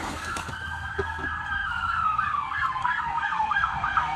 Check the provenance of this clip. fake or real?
fake